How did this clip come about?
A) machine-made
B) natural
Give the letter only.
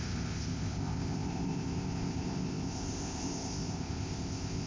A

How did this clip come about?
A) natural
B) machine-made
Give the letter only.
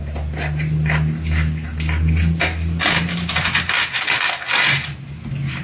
A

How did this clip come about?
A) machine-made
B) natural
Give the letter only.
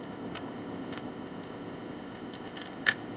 A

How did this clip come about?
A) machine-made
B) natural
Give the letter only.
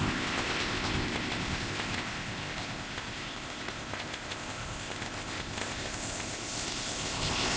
A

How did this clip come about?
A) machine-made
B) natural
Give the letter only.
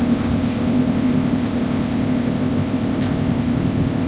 A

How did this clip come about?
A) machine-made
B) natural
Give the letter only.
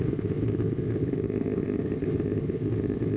A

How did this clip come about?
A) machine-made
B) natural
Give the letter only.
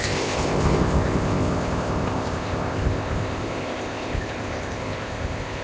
A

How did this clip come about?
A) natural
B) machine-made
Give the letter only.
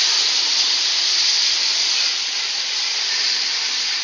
A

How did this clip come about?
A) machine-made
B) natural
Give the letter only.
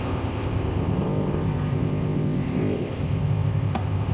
A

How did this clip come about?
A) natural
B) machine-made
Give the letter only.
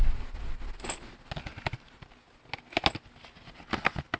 A